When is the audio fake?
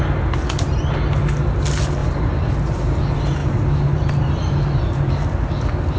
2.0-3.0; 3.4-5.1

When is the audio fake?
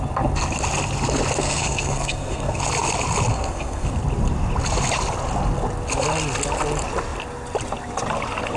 1.4-2.6; 3.3-3.9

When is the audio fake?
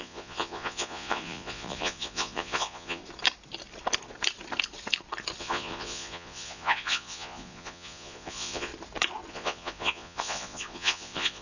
0.0-3.0; 5.4-8.7; 9.3-11.4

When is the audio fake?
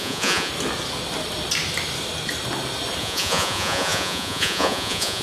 0.0-0.5; 3.0-5.2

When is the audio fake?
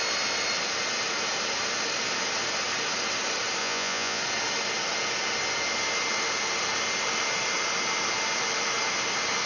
3.6-4.2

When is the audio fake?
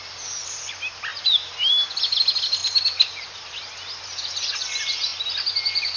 none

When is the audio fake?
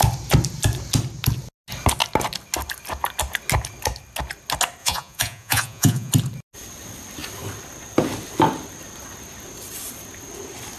4.8-6.1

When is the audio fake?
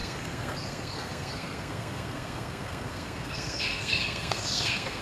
0.0-5.0